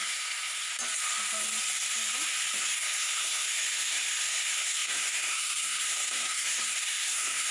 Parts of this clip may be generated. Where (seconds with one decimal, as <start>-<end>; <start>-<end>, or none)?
0.0-0.7; 2.6-7.5